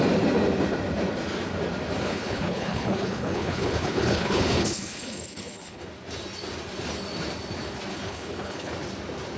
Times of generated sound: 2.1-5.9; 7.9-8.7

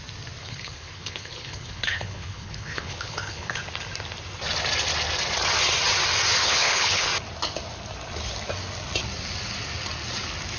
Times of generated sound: 0.4-3.6; 6.4-7.1

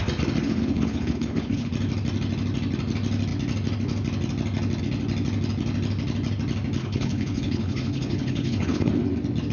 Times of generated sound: 0.4-1.7; 6.8-8.9

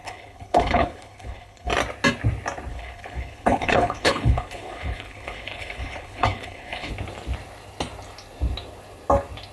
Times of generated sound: 0.0-1.7; 2.7-6.9

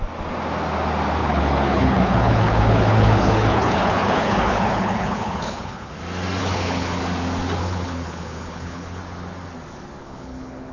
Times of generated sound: 1.2-5.9; 6.4-7.0; 7.6-9.0; 10.0-10.7

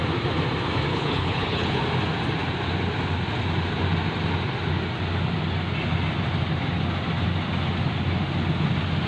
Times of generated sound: 0.9-1.8